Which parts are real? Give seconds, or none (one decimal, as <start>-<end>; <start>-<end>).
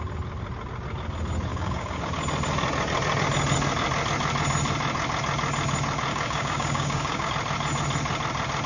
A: 0.0-1.5; 2.0-6.1; 7.3-8.7